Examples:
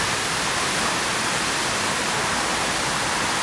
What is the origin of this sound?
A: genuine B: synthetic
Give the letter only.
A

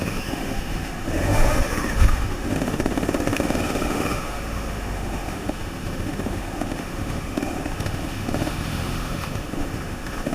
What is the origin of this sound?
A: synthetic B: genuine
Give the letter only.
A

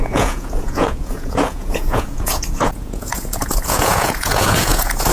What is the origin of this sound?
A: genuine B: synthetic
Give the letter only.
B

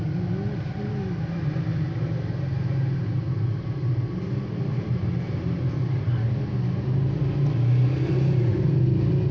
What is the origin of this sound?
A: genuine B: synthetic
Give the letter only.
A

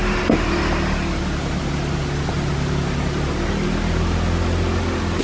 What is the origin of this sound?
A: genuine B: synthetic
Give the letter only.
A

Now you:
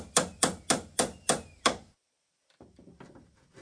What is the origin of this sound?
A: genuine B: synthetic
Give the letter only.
A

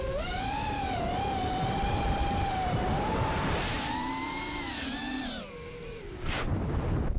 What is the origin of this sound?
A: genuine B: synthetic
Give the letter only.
B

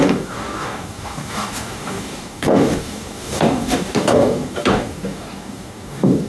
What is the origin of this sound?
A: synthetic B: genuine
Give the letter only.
A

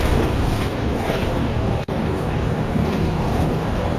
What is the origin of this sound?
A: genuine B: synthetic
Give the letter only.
B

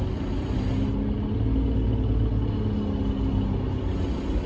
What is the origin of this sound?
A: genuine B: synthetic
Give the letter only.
A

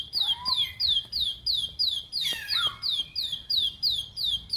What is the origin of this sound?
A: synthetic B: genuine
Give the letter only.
B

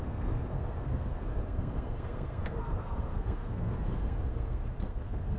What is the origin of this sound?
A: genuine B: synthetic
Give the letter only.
B